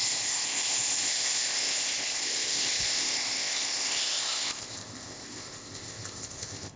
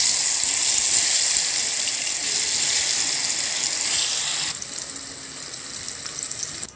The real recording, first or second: second